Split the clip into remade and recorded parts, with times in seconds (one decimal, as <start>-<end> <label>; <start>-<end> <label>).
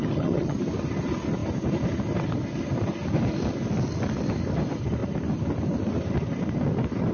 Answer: 0.0-0.6 remade; 0.6-7.1 recorded